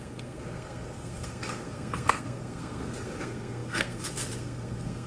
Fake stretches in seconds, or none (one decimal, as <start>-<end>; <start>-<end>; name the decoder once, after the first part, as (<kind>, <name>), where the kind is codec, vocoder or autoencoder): 0.0-5.1 (codec, SNAC)